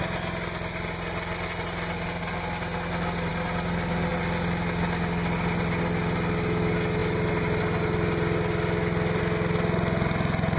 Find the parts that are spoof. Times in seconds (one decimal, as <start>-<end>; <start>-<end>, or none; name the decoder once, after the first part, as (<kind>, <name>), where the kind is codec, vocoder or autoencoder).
none

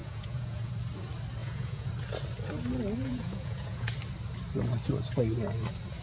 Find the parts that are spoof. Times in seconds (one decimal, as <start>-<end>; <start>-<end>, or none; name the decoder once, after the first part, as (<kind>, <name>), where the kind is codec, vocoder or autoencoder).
0.0-0.7 (vocoder, Vocos); 1.4-1.9; 3.0-3.9

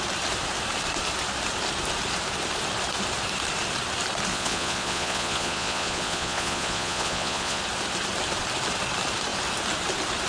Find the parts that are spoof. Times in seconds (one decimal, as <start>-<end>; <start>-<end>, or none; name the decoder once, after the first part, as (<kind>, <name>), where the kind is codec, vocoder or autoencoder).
4.3-7.6 (vocoder, Vocos)

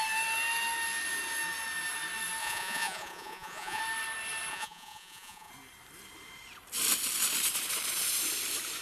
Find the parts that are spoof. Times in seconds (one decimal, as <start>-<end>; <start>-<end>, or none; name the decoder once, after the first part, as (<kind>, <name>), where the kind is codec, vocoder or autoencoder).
2.4-3.8 (vocoder, Vocos); 4.5-5.5

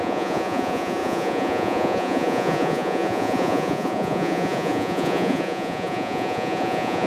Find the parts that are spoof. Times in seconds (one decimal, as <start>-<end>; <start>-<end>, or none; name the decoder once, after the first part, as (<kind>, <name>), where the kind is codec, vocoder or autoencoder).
0.0-7.1 (vocoder, Vocos)

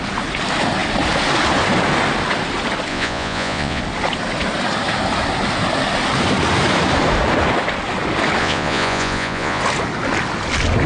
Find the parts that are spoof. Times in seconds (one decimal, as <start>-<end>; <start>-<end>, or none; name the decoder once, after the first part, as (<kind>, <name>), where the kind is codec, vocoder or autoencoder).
2.9-3.8 (vocoder, Vocos); 8.4-9.6

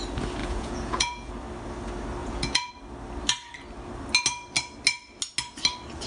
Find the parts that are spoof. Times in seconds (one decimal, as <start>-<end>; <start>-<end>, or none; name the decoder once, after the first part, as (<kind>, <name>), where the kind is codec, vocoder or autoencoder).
0.4-1.3 (vocoder, Vocos); 2.2-2.7